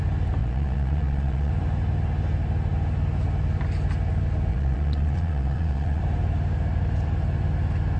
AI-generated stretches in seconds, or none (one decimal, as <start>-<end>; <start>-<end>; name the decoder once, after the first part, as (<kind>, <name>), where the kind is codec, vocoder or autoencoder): 0.4-1.5 (vocoder, Vocos); 4.5-6.0